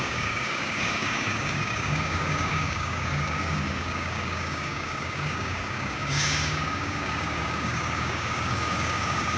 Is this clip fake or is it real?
fake